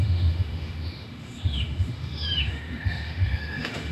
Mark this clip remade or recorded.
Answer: remade